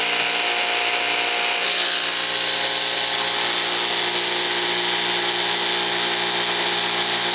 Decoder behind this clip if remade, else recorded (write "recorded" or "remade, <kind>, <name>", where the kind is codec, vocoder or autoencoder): recorded